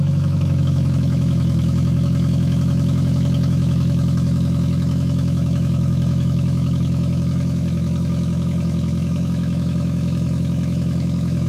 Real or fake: fake